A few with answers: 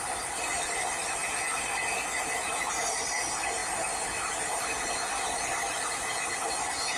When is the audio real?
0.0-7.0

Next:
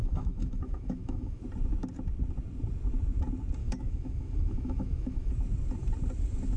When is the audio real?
1.4-3.6; 5.3-6.6

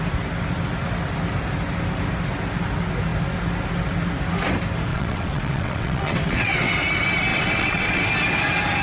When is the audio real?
0.0-4.9; 6.7-7.3; 8.0-8.8

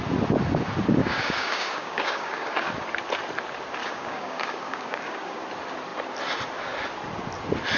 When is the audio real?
0.0-1.0; 2.7-3.8; 5.4-7.8

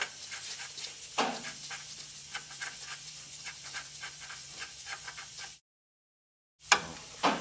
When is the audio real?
0.0-2.2; 6.2-7.4